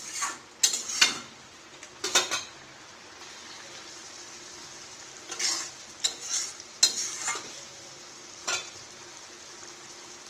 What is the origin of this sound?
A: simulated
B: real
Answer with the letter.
B